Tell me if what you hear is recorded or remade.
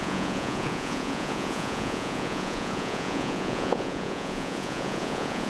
remade